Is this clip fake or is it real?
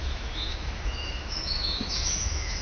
fake